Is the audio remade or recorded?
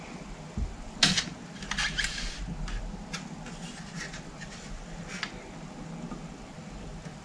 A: recorded